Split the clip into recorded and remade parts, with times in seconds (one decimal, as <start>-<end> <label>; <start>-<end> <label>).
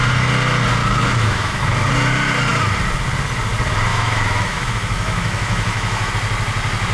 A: 0.0-0.8 recorded; 0.8-1.6 remade; 1.6-3.9 recorded; 3.9-6.1 remade; 6.1-6.9 recorded